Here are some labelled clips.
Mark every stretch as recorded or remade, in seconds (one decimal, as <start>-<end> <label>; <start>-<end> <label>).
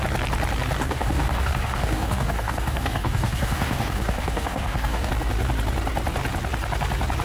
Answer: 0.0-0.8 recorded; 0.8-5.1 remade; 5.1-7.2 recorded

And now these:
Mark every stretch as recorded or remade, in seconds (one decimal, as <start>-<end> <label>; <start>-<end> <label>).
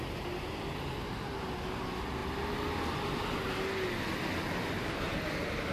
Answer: 0.0-5.7 recorded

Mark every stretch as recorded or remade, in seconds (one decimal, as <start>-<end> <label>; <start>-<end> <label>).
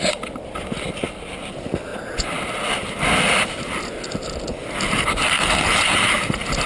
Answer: 0.0-6.7 recorded